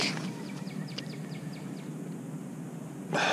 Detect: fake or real real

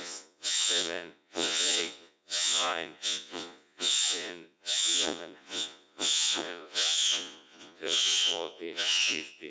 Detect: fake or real fake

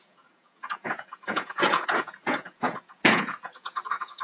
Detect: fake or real fake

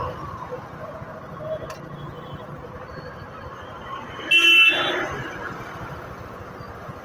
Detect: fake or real real